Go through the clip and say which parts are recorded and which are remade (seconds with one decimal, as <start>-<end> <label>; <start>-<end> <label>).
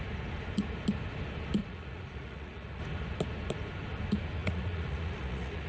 0.0-1.6 recorded; 1.6-2.8 remade; 2.8-4.4 recorded; 4.4-5.7 remade